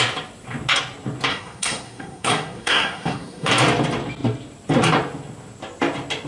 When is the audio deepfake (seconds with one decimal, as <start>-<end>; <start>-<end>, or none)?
1.3-3.5